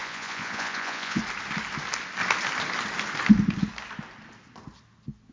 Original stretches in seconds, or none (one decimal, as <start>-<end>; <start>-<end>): 1.2-5.3